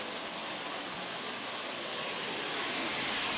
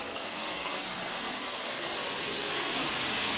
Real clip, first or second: first